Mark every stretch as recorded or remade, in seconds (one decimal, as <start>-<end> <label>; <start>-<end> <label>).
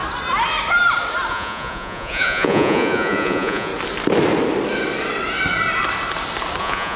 0.0-1.3 recorded; 1.3-3.7 remade; 3.7-6.6 recorded; 6.6-7.0 remade